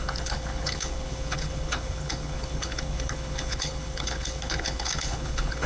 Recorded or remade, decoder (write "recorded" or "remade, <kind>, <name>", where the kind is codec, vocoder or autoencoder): remade, codec, HILCodec